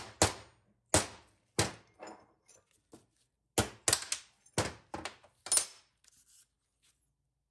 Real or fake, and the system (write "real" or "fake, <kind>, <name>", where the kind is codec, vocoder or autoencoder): real